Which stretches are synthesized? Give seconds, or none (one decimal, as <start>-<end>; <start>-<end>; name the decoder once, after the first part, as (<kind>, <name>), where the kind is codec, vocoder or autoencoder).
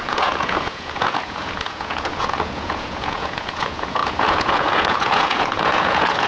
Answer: 0.0-6.3 (vocoder, Vocos)